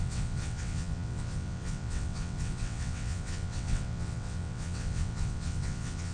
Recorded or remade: remade